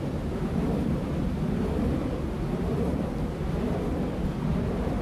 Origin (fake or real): real